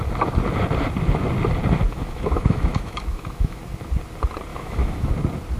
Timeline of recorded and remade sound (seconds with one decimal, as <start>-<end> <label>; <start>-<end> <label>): 0.0-1.9 recorded; 1.9-3.6 remade; 3.6-4.5 recorded; 4.5-5.1 remade; 5.1-5.6 recorded